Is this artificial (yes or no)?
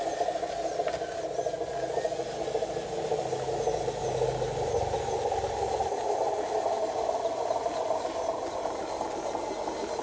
no